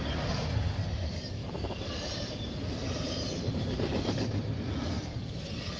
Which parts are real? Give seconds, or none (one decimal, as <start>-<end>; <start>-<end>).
0.0-1.4; 4.9-5.8